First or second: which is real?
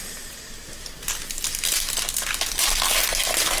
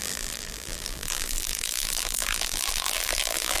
first